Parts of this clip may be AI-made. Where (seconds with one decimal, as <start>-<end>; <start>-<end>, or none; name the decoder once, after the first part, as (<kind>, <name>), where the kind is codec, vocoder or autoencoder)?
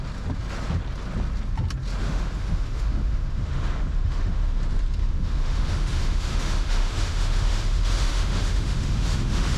2.0-4.6 (autoencoder, DAC-VAE); 5.0-9.6